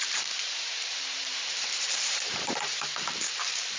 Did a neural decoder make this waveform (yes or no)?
yes